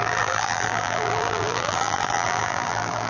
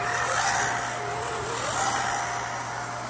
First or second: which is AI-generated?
first